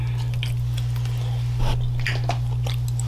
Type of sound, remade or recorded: recorded